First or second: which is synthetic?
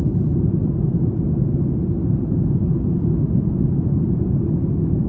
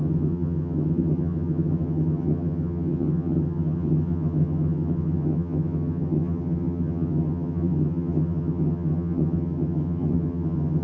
second